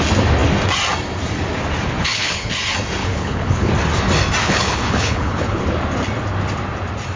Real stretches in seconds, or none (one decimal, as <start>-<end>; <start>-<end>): 0.0-2.0; 2.5-3.0; 3.7-4.4; 5.6-7.2